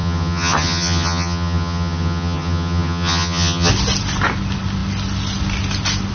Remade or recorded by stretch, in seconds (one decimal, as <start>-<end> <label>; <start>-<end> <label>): 0.0-3.7 remade; 3.7-6.1 recorded